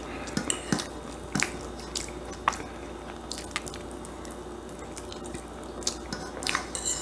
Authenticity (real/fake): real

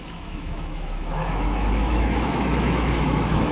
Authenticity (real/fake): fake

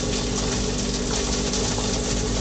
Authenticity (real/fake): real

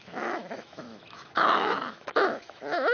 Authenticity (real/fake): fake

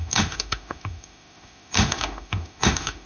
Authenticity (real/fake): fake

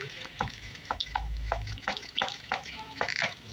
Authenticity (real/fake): fake